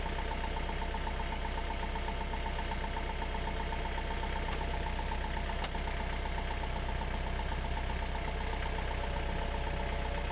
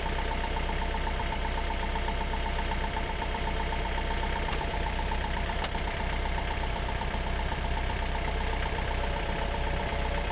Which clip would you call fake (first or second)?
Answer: second